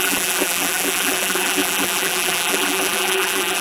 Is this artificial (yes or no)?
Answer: yes